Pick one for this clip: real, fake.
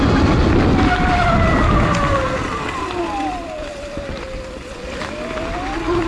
real